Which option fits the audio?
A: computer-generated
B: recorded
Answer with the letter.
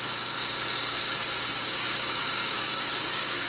A